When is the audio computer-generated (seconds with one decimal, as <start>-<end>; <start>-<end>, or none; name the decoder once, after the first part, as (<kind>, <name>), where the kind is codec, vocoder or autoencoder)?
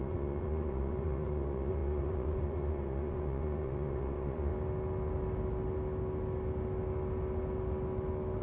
0.0-4.5 (vocoder, Vocos)